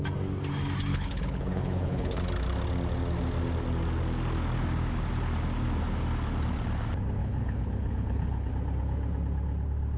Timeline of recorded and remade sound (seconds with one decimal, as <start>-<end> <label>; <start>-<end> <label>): 0.0-0.9 recorded; 0.9-2.2 remade; 2.2-7.2 recorded; 7.2-8.5 remade; 8.5-10.0 recorded

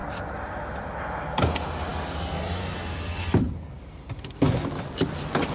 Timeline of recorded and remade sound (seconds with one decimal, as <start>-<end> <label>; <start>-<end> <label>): 0.0-5.5 recorded

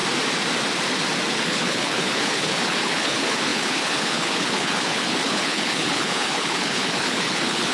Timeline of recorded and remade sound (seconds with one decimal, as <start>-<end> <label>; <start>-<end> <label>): 0.0-1.3 recorded; 1.3-7.7 remade

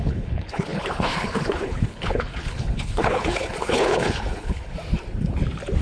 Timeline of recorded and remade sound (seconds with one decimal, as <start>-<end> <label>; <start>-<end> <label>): 0.0-4.7 remade; 4.7-5.8 recorded